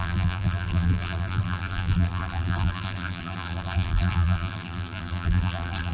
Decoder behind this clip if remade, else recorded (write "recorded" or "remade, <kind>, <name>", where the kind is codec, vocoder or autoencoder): remade, vocoder, BigVGAN v2